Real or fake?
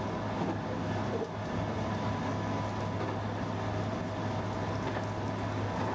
real